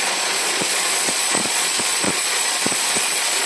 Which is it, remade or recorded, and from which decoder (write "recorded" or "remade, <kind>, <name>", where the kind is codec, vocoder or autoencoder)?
remade, vocoder, Vocos